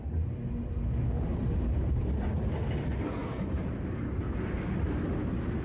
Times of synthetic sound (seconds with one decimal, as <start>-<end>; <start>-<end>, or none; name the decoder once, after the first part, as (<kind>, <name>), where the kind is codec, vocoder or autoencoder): 1.3-2.0 (vocoder, BigVGAN v2); 3.2-4.0